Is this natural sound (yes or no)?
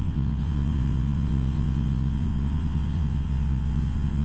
no